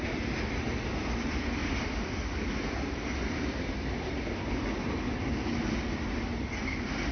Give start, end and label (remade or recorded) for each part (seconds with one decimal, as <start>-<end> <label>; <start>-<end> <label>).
0.0-1.6 recorded; 1.6-2.4 remade; 2.4-7.1 recorded